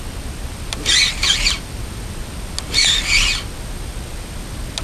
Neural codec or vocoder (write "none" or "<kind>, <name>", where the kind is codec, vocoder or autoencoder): none